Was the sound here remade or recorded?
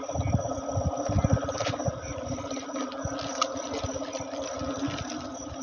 recorded